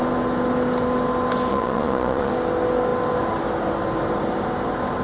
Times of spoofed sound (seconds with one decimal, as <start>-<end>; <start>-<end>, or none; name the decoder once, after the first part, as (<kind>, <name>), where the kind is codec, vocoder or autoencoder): 1.5-2.3 (vocoder, Vocos)